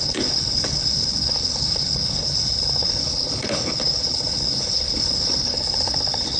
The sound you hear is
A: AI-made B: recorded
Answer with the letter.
A